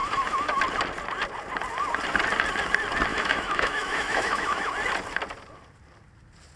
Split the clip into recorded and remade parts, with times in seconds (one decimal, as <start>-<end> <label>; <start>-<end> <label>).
0.0-0.6 remade; 0.6-3.1 recorded; 3.1-4.7 remade; 4.7-6.6 recorded